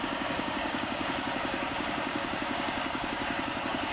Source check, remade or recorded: remade